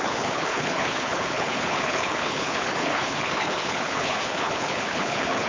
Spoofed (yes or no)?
yes